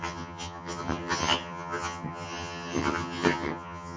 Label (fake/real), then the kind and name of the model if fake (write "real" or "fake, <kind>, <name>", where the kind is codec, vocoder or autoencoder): fake, vocoder, HiFi-GAN